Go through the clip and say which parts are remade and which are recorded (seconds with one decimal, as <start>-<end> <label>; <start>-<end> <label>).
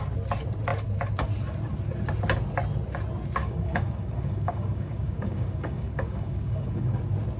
0.0-3.4 recorded; 3.4-7.0 remade; 7.0-7.4 recorded